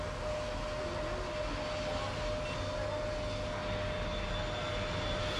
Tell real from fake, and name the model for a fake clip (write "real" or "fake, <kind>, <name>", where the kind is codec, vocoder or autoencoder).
real